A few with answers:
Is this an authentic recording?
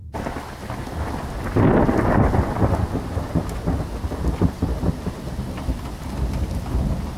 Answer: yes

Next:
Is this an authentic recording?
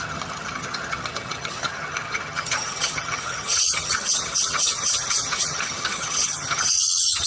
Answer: no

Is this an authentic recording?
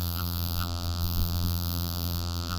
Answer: no